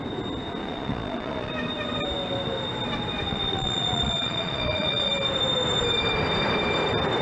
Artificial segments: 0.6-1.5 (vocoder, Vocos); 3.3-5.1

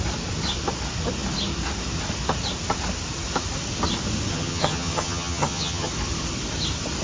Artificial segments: 4.3-5.9 (vocoder, HiFi-GAN)

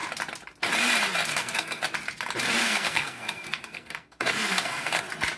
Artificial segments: 1.3-1.8 (codec, SNAC); 2.6-5.0